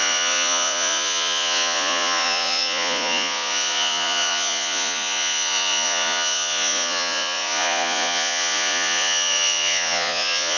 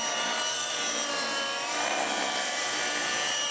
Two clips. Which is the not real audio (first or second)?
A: first